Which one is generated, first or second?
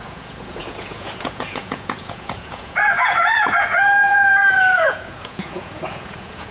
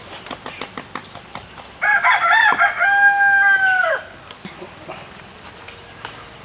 first